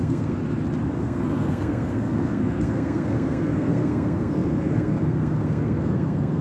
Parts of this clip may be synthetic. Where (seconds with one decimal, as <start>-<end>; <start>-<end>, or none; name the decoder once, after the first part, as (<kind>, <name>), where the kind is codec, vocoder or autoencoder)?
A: 0.0-0.4 (codec, SNAC); 0.9-6.4